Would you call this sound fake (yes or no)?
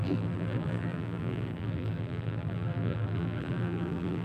yes